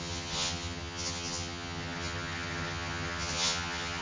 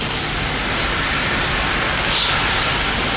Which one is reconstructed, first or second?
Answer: first